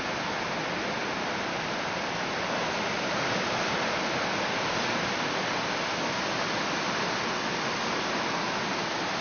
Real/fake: real